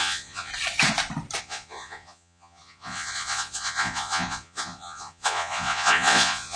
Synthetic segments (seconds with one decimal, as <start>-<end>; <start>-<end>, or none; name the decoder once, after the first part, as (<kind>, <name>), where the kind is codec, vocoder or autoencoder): 0.0-0.5 (vocoder, Vocos); 1.4-6.6